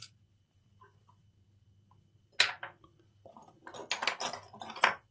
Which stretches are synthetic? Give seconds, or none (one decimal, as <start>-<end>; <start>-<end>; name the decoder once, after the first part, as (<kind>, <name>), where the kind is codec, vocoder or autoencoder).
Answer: none